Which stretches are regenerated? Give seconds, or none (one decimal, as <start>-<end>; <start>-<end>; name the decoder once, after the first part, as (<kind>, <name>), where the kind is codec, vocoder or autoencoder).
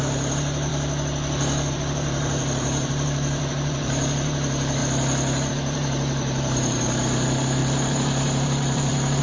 0.0-0.7 (vocoder, BigVGAN v2); 1.7-4.8; 5.5-9.2